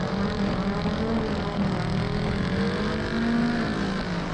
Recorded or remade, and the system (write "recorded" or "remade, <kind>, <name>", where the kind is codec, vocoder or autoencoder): recorded